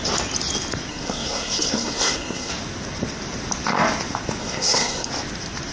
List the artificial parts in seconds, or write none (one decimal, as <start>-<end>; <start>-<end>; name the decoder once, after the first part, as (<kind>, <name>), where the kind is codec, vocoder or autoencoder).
0.9-2.5 (codec, SNAC); 4.4-5.1